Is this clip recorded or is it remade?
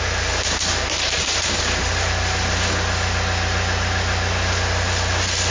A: recorded